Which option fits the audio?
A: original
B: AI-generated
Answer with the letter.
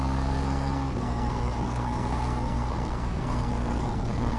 B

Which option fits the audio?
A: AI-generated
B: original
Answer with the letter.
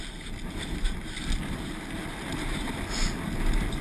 B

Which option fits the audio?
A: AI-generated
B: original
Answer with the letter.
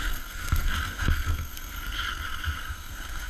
A